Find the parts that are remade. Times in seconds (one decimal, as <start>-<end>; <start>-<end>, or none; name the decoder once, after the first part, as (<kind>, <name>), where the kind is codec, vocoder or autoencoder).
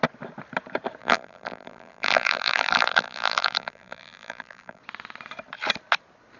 1.0-4.8 (vocoder, BigVGAN v2)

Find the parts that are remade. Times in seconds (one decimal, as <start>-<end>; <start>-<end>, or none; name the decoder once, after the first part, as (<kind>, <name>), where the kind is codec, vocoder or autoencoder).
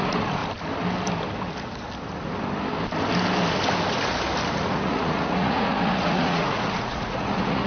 0.0-0.4 (vocoder, Vocos); 4.7-7.7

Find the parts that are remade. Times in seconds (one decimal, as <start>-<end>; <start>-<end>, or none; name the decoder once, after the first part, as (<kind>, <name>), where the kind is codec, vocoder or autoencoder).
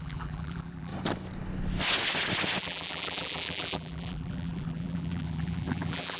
0.0-0.9 (vocoder, BigVGAN v2); 2.6-6.2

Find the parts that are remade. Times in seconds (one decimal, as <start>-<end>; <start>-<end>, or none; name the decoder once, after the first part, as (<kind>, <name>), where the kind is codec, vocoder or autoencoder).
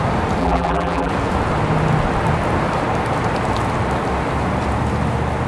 0.4-1.1 (vocoder, BigVGAN v2)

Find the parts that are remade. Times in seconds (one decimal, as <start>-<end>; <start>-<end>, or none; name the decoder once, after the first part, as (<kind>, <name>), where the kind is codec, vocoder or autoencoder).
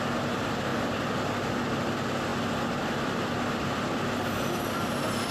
none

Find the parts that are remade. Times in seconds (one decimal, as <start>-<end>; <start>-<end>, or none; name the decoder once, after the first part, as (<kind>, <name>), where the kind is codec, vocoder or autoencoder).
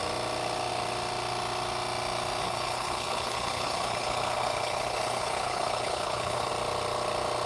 2.4-6.5 (codec, HILCodec)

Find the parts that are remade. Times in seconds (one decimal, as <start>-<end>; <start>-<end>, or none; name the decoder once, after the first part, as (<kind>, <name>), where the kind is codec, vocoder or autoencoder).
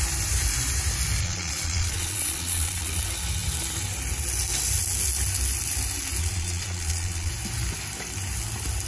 1.2-3.0 (vocoder, Vocos); 6.2-7.3